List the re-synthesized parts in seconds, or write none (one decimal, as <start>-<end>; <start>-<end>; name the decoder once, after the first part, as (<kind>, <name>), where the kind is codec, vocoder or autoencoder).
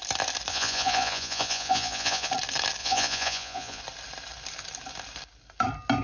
0.5-2.3 (vocoder, Vocos); 2.8-3.8